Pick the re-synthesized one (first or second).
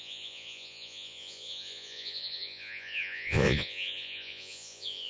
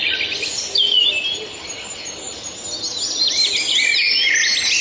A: first